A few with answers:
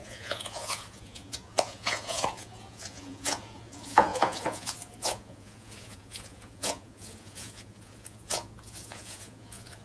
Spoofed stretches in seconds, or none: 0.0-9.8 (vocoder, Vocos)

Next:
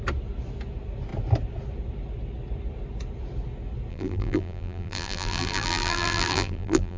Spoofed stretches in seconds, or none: 3.9-7.0 (vocoder, BigVGAN v2)

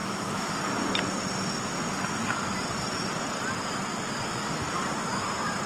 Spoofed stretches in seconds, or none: 0.0-0.5 (autoencoder, DAC-VAE)

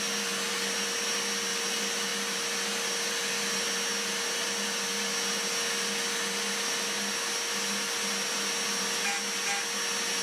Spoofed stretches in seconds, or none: none